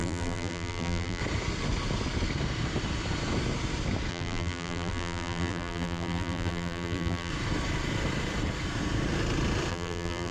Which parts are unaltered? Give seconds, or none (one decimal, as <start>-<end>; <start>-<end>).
1.2-4.1; 7.3-9.7